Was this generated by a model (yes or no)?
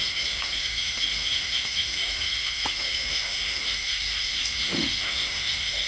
yes